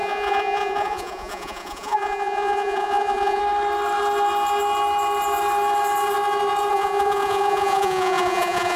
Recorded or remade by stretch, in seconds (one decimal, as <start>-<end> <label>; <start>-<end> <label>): 0.0-3.4 remade; 3.4-6.7 recorded; 6.7-8.8 remade